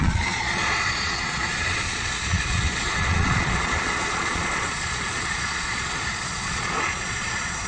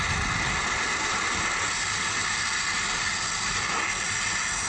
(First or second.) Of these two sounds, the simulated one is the first